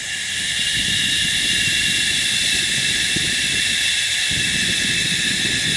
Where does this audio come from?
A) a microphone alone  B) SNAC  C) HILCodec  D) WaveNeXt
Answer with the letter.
A